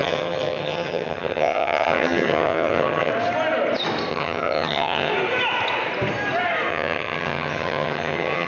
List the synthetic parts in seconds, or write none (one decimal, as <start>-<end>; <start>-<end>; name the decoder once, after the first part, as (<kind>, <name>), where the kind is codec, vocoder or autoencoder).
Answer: 0.0-3.1 (vocoder, HiFi-GAN); 4.1-5.1; 6.7-8.5